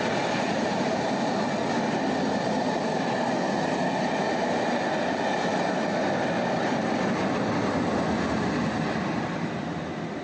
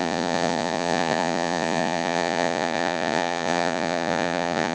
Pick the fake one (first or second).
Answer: second